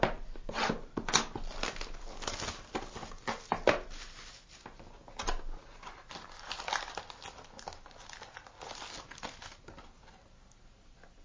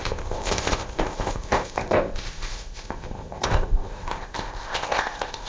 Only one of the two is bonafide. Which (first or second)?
first